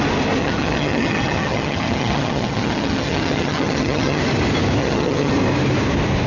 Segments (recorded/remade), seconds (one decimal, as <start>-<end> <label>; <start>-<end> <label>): 0.0-0.4 recorded; 0.4-4.2 remade; 4.2-4.8 recorded; 4.8-5.3 remade; 5.3-6.3 recorded